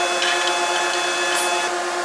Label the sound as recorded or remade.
recorded